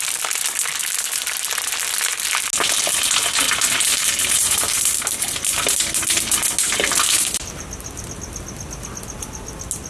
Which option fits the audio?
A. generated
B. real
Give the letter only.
B